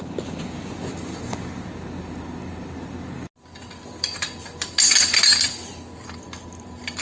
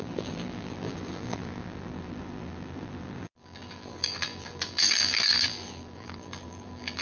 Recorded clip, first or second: first